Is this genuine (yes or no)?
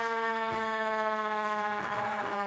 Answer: no